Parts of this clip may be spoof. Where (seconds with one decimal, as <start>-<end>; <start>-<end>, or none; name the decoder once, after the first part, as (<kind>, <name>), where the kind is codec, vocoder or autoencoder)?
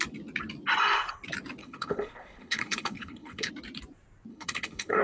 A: 1.6-3.5 (codec, HILCodec); 4.3-5.0